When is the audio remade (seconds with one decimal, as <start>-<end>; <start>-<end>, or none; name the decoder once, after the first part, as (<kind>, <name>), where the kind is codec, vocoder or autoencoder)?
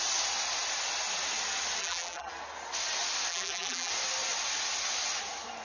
1.8-2.3 (vocoder, BigVGAN v2); 3.3-3.9